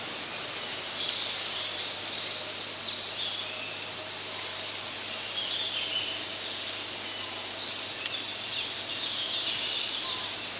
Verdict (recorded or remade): recorded